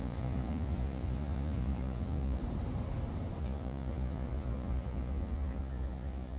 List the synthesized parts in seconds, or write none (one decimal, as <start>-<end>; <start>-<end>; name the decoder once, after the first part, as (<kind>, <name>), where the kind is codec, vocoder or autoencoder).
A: 0.0-2.4 (vocoder, Vocos); 3.4-6.4